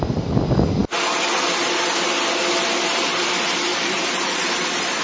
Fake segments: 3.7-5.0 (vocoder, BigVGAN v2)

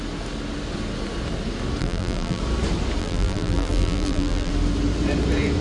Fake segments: 1.8-2.4 (vocoder, BigVGAN v2); 3.0-4.5

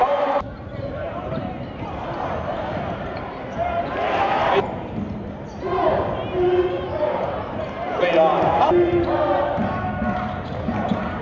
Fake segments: 0.0-8.0 (vocoder, BigVGAN v2); 10.1-11.2

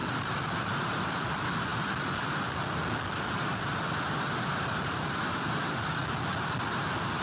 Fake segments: 0.0-6.0 (vocoder, BigVGAN v2); 6.7-7.2